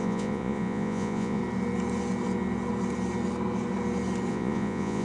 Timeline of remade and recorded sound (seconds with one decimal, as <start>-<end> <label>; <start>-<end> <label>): 0.0-1.4 remade; 1.4-4.3 recorded; 4.3-5.0 remade

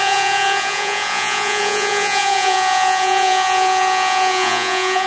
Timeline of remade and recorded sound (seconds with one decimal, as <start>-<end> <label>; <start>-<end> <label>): 0.0-5.1 remade

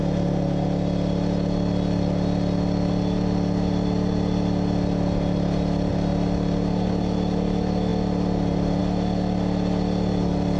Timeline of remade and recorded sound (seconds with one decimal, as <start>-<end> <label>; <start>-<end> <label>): 0.0-10.6 recorded